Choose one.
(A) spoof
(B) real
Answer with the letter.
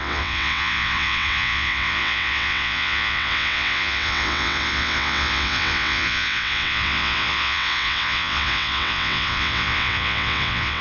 A